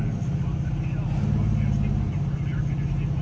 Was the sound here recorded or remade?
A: recorded